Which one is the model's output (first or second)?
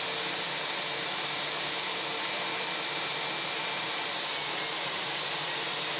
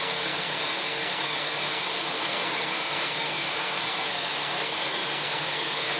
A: second